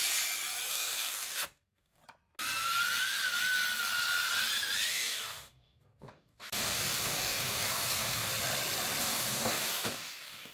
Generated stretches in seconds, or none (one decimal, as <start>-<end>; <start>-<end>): 0.7-2.0; 4.9-8.3; 9.0-10.5